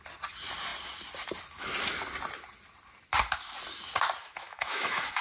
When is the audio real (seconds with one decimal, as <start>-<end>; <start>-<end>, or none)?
0.0-4.2